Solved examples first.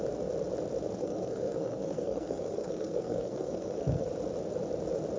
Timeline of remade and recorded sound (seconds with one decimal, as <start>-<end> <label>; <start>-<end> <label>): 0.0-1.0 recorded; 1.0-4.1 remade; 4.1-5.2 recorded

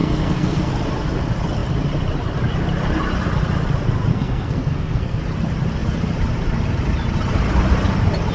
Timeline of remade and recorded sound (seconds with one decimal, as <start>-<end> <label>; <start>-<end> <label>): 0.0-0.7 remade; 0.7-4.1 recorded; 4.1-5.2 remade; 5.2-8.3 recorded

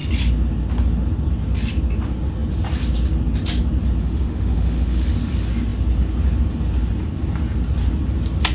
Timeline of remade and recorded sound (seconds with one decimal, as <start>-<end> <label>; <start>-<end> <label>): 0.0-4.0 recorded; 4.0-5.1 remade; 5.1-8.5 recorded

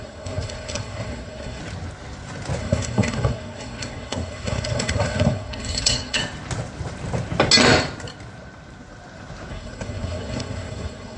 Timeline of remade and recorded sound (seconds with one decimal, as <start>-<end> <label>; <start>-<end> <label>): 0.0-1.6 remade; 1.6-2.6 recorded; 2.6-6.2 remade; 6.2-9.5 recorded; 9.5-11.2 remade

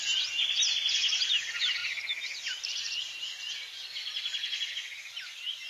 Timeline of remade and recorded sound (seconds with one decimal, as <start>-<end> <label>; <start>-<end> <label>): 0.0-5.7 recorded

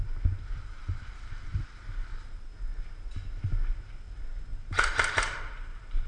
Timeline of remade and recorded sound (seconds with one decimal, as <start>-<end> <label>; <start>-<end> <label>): 0.0-0.8 recorded; 0.8-2.5 remade; 2.5-4.5 recorded; 4.5-6.1 remade